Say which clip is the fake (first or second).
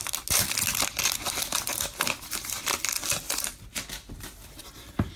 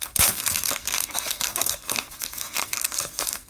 second